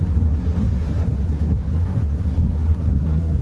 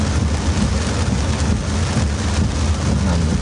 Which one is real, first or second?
second